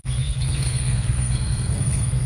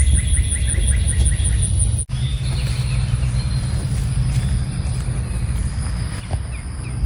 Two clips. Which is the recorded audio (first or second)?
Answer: second